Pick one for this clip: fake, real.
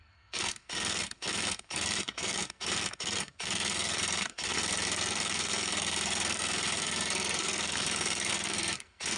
fake